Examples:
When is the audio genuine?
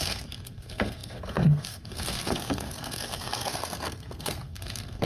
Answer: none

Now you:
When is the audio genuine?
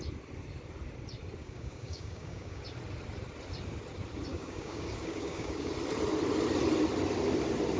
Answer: 0.0-1.4; 2.6-4.3; 5.7-7.8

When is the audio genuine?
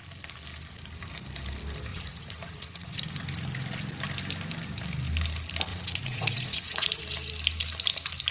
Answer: 0.0-1.9; 3.0-5.7; 7.0-8.3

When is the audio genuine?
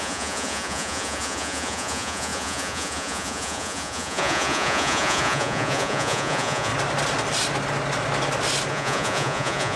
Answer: 6.7-8.7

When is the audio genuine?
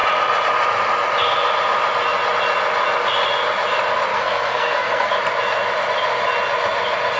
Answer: 0.0-4.1; 5.1-7.2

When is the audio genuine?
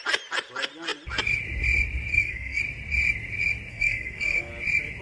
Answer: 0.0-2.1; 2.6-3.7; 4.5-5.0